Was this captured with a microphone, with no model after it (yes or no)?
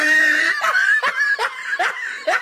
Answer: no